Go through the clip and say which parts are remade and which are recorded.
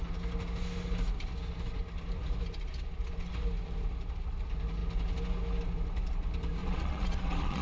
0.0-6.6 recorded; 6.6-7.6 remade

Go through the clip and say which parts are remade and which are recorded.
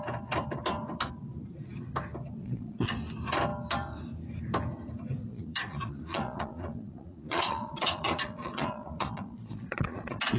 0.0-2.4 recorded; 2.4-2.9 remade; 2.9-5.3 recorded; 5.3-10.4 remade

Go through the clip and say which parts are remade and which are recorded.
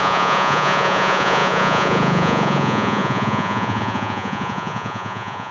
0.0-5.5 remade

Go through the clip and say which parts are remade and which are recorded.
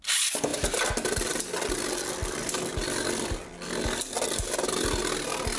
0.0-5.6 recorded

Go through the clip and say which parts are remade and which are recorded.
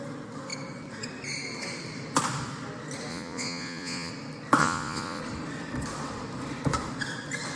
0.0-3.1 recorded; 3.1-4.1 remade; 4.1-4.6 recorded; 4.6-5.2 remade; 5.2-7.6 recorded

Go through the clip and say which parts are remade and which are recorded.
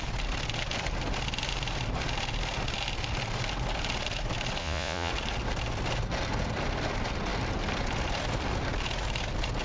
0.0-4.6 recorded; 4.6-5.1 remade; 5.1-9.6 recorded